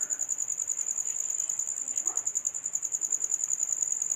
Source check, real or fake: real